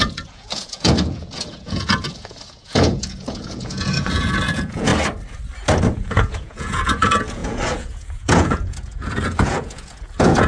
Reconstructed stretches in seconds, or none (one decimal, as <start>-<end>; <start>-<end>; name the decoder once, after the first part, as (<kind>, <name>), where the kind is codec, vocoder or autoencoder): 0.0-4.9 (vocoder, Vocos); 5.9-10.5